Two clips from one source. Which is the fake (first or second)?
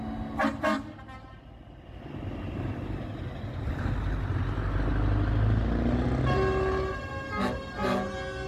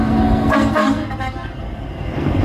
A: second